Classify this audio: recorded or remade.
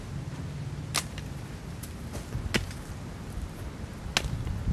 recorded